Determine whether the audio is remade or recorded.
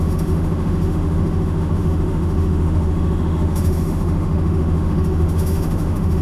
remade